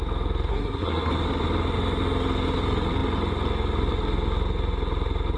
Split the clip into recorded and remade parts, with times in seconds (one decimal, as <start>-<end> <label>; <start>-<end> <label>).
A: 0.0-0.5 recorded; 0.5-1.1 remade; 1.1-5.4 recorded